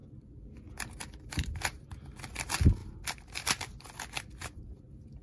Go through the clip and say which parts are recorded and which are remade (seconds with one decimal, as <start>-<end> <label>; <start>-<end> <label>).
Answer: 0.0-5.2 recorded